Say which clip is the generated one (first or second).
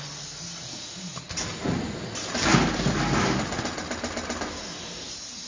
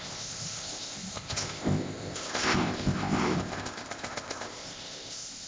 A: second